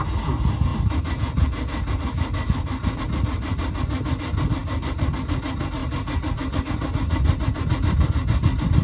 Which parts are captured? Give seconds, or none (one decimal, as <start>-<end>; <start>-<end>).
0.0-8.8